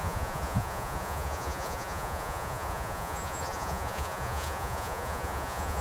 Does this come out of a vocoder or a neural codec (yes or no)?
yes